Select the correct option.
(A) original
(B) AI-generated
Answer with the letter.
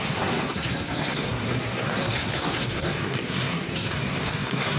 B